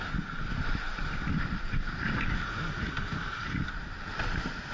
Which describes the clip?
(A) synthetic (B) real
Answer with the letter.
B